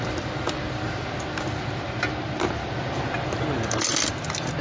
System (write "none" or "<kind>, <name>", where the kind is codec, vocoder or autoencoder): none